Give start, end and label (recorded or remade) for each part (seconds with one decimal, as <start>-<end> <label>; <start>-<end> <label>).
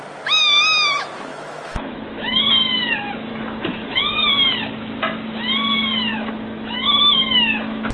0.0-1.3 recorded; 1.3-2.5 remade; 2.5-3.3 recorded; 3.3-4.3 remade; 4.3-6.1 recorded; 6.1-7.9 remade